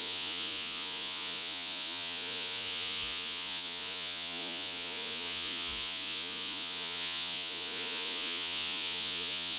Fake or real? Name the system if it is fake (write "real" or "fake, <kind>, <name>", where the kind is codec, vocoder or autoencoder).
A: fake, vocoder, Vocos